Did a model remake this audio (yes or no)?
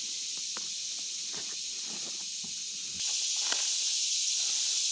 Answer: no